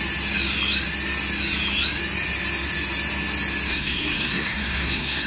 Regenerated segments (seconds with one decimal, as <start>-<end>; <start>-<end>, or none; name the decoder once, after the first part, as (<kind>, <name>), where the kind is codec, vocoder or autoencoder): 3.7-5.3 (codec, SNAC)